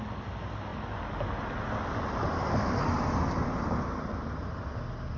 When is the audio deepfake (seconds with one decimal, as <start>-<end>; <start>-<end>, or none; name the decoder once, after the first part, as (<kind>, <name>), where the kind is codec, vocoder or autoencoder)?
none